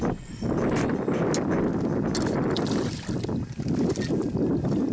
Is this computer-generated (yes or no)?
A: no